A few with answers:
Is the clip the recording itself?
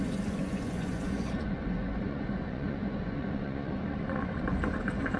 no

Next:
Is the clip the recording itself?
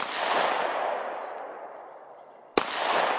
yes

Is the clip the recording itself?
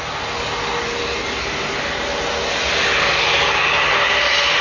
yes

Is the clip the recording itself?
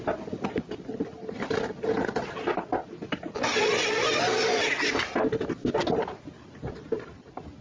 yes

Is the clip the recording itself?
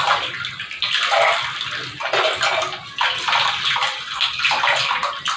yes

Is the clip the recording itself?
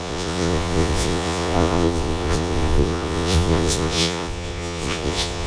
no